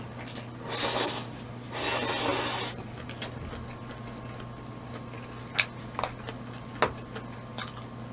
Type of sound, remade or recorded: recorded